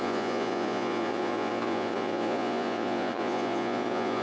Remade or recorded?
remade